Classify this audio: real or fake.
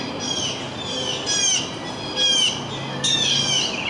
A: real